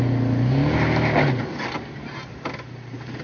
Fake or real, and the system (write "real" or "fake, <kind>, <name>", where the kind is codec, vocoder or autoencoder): real